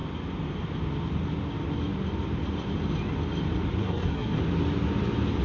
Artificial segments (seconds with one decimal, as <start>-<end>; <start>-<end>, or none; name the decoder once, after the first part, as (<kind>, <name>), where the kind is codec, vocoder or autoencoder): 3.8-4.4 (codec, SNAC)

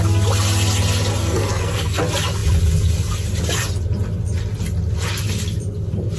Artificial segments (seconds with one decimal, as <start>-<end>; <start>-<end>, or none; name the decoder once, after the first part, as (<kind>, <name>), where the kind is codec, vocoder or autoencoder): 1.2-2.0 (codec, SNAC)

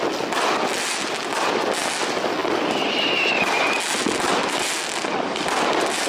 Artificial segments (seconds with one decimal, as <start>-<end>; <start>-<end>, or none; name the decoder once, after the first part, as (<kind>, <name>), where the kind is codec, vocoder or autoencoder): none

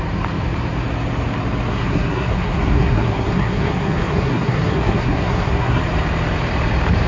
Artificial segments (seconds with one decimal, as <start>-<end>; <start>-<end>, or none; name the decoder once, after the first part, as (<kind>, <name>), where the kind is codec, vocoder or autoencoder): 1.7-5.8 (codec, SNAC)